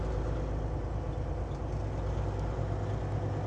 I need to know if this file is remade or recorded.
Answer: recorded